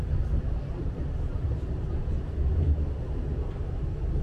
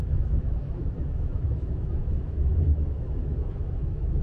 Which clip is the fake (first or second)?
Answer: second